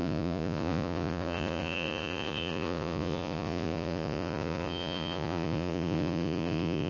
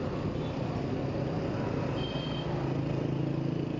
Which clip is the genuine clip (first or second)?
second